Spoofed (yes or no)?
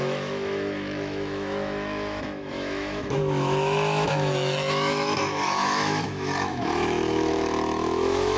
yes